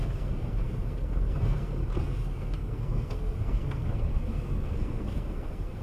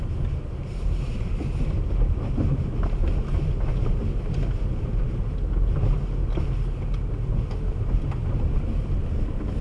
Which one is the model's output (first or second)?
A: first